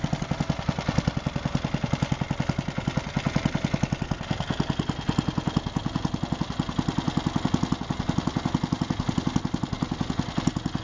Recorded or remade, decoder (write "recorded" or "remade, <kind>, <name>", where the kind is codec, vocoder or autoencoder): recorded